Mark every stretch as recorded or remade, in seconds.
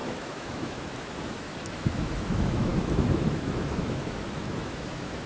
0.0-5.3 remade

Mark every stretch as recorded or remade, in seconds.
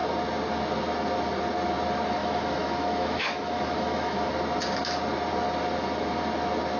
0.0-2.2 recorded; 2.2-4.3 remade; 4.3-6.8 recorded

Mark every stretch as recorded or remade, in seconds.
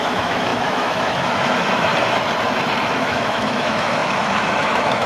0.0-1.9 remade; 1.9-2.8 recorded; 2.8-5.1 remade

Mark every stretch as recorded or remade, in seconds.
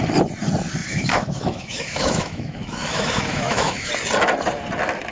0.0-0.8 recorded; 0.8-3.9 remade; 3.9-5.1 recorded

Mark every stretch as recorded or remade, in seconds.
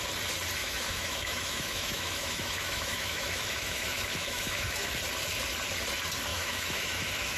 0.0-0.6 recorded; 0.6-5.0 remade; 5.0-6.3 recorded; 6.3-7.4 remade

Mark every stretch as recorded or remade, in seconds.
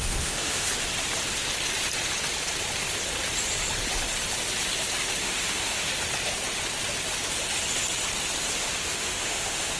0.0-0.7 remade; 0.7-5.2 recorded; 5.2-5.9 remade; 5.9-8.6 recorded; 8.6-9.8 remade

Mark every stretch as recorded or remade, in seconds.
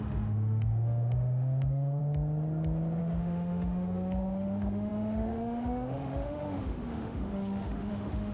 0.0-2.0 remade; 2.0-3.0 recorded; 3.0-8.3 remade